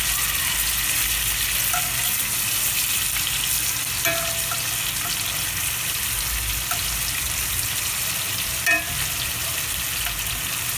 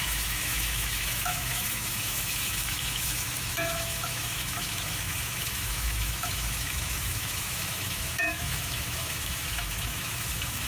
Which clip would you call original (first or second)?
first